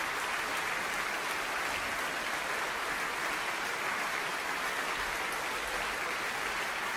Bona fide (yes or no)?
yes